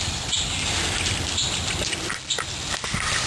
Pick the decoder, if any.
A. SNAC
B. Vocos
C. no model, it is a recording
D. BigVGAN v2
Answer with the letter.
C